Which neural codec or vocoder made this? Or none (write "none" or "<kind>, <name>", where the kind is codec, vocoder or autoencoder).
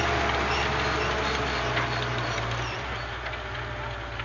none